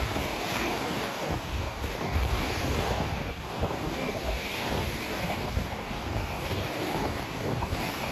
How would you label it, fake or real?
fake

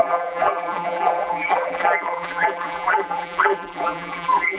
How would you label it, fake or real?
fake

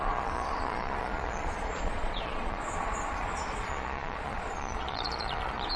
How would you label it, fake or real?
fake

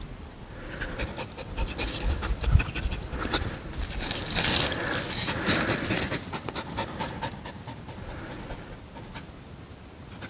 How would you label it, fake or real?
real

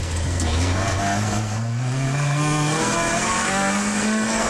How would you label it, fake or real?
fake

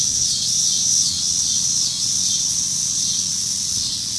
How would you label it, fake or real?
fake